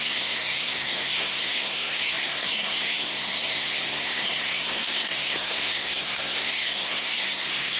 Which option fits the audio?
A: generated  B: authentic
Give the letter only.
A